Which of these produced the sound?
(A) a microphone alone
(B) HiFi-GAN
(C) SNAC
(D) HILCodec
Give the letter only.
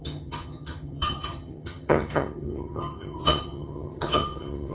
B